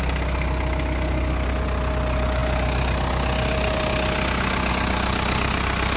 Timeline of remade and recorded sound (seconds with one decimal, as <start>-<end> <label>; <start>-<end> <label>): 0.0-6.0 recorded